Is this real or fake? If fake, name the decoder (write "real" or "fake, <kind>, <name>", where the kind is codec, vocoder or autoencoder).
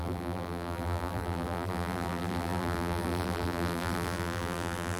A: fake, vocoder, BigVGAN v2